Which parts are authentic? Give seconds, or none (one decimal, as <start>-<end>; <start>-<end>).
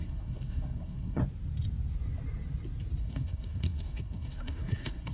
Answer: 1.2-3.0